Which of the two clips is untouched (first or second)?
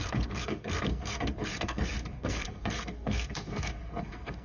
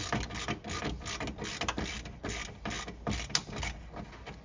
second